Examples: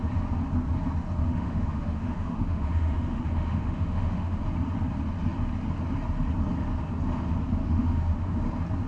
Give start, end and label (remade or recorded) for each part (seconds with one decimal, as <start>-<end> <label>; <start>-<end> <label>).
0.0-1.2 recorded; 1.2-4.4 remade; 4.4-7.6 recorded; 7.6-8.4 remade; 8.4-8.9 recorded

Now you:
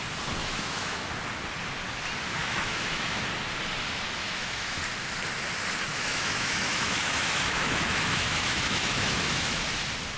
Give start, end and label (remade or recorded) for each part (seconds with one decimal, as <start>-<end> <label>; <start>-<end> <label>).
0.0-0.4 recorded; 0.4-1.1 remade; 1.1-2.4 recorded; 2.4-3.2 remade; 3.2-4.2 recorded; 4.2-4.8 remade; 4.8-5.9 recorded; 5.9-9.6 remade; 9.6-10.2 recorded

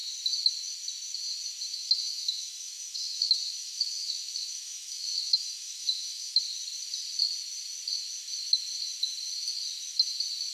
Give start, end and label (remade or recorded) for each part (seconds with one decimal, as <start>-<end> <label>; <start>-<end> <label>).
0.0-1.7 recorded; 1.7-6.4 remade; 6.4-10.5 recorded

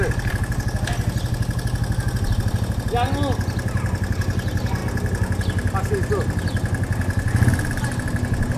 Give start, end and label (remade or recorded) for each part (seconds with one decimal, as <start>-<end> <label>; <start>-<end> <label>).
0.0-8.6 recorded

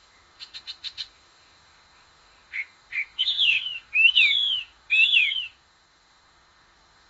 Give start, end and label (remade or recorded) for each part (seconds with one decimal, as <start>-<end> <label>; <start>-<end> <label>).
0.0-7.1 remade

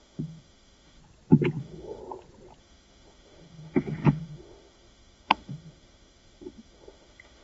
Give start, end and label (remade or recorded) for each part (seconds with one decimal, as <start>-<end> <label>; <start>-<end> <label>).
0.0-1.0 remade; 1.0-1.6 recorded; 1.6-2.0 remade; 2.0-2.6 recorded; 2.6-7.4 remade

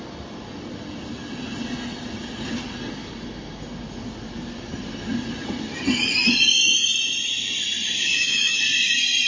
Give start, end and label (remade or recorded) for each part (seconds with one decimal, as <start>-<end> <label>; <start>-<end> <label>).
0.0-8.1 recorded; 8.1-8.6 remade; 8.6-9.3 recorded